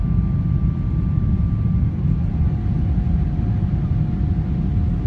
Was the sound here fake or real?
real